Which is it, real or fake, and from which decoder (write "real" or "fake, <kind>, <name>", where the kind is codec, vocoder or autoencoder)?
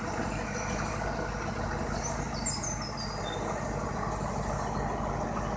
real